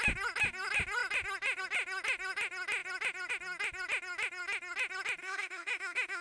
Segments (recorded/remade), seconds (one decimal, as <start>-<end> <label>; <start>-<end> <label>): 0.0-5.2 recorded; 5.2-6.2 remade